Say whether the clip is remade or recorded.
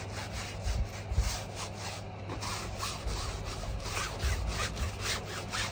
recorded